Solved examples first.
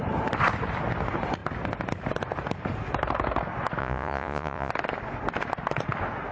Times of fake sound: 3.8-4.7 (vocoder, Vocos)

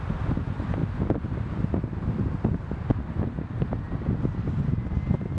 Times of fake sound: none

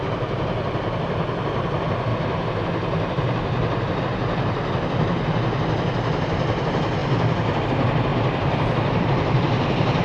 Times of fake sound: 2.1-4.0 (vocoder, BigVGAN v2)